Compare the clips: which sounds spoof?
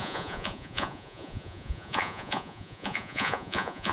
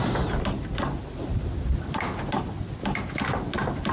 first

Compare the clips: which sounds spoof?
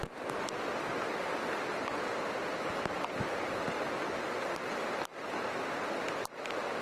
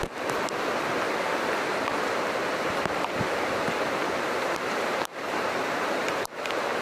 second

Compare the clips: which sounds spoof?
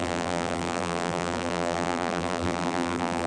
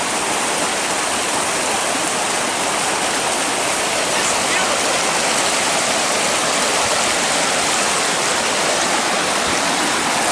first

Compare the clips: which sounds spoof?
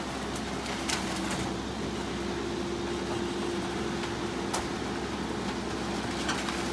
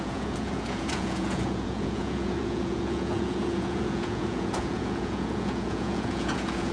second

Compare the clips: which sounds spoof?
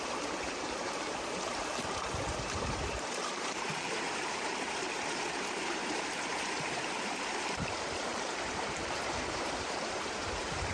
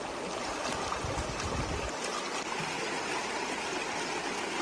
first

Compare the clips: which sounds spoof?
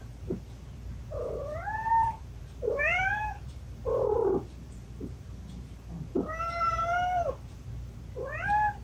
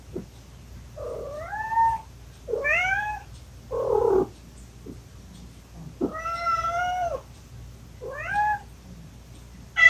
first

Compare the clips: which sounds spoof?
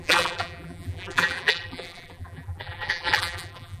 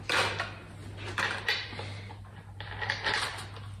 first